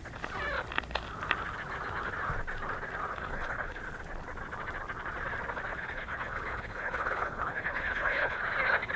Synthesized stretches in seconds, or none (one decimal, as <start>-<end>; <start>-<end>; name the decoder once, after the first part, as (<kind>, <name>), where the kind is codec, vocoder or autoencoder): 3.1-3.8 (codec, HILCodec); 5.7-8.4